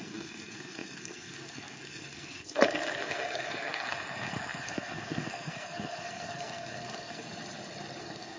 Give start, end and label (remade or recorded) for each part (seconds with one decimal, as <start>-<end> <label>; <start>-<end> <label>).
0.0-7.4 remade; 7.4-8.0 recorded; 8.0-8.4 remade